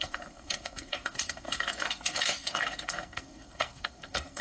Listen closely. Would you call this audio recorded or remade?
remade